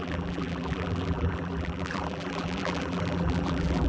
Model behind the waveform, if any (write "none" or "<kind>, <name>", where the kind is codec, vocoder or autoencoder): vocoder, BigVGAN v2